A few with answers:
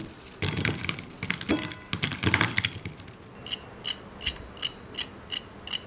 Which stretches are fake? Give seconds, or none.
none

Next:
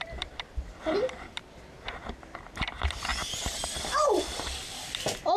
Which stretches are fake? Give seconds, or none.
0.0-5.4 (vocoder, BigVGAN v2)

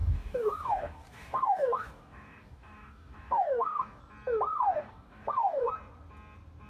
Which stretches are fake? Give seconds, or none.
0.0-4.0 (codec, DAC); 4.5-5.7

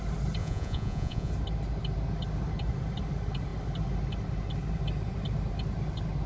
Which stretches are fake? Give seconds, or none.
0.4-1.3 (vocoder, Vocos)